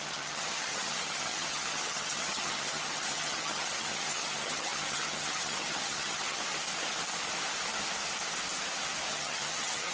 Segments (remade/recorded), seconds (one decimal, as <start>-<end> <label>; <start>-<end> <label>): 0.0-6.4 remade; 6.4-9.1 recorded; 9.1-9.9 remade